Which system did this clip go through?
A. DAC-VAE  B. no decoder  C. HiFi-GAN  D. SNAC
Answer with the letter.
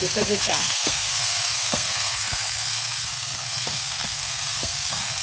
D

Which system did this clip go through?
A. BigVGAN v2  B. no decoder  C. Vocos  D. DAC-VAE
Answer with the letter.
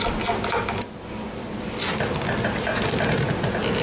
B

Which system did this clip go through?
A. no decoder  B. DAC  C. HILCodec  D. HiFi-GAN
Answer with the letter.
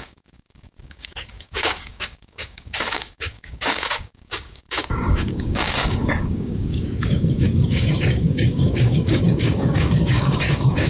B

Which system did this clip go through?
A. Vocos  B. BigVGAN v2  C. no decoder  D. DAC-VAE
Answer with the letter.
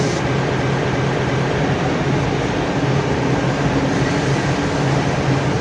C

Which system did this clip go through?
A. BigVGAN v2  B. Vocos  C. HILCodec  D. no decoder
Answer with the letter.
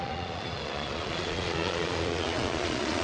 B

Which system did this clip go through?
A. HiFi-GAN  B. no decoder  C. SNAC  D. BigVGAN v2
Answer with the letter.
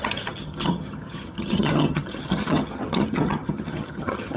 A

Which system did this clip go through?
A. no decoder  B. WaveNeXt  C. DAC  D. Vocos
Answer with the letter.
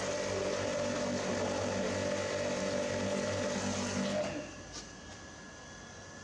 A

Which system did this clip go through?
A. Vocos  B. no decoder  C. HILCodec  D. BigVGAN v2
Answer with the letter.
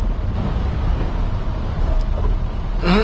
B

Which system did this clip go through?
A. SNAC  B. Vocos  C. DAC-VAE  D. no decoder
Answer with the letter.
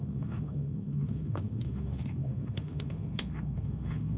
C